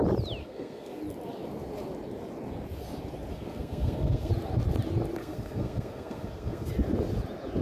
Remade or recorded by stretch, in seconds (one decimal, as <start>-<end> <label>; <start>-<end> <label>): 0.0-0.4 recorded; 0.4-1.0 remade; 1.0-3.3 recorded; 3.3-4.3 remade; 4.3-5.2 recorded; 5.2-6.7 remade; 6.7-7.6 recorded